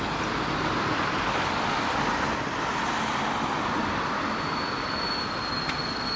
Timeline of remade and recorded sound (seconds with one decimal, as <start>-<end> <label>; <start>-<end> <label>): 0.0-6.2 recorded